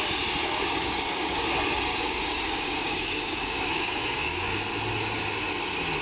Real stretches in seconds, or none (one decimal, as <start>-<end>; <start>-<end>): 0.0-0.4; 1.5-1.9; 4.6-6.0